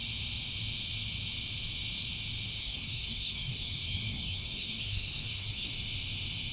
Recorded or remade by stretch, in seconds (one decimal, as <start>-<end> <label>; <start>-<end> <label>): 0.0-2.6 recorded; 2.6-5.7 remade; 5.7-6.5 recorded